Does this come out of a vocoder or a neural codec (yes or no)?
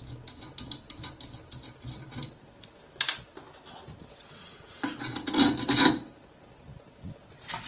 no